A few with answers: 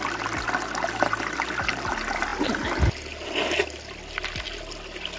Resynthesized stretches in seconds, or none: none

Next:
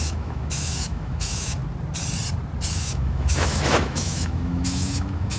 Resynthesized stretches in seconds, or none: 0.0-1.6 (autoencoder, DAC-VAE); 2.7-5.4

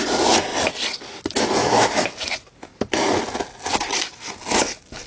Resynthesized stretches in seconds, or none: 1.6-2.1 (autoencoder, DAC-VAE)

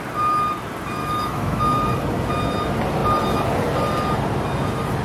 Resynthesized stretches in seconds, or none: 1.0-1.6 (autoencoder, DAC-VAE)

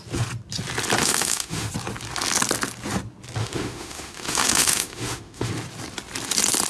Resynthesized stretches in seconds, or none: 1.0-1.7 (autoencoder, DAC-VAE); 3.4-5.5

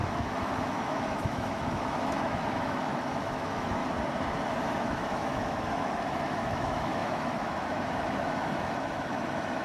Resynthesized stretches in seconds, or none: 0.0-3.8 (autoencoder, DAC-VAE); 4.8-9.6

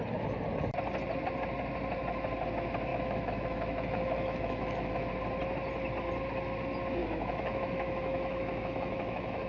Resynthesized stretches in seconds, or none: 2.9-5.1 (autoencoder, DAC-VAE); 7.0-9.5

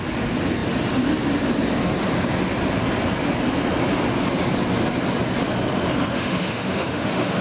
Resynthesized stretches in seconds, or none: 6.1-7.4 (autoencoder, DAC-VAE)